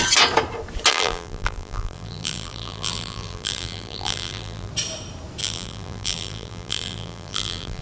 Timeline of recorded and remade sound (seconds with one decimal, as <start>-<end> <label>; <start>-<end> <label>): 0.0-0.9 recorded; 0.9-4.7 remade; 4.7-5.4 recorded; 5.4-7.8 remade